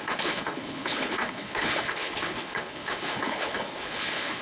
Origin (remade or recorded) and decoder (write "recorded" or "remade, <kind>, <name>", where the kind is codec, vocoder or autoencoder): remade, codec, HILCodec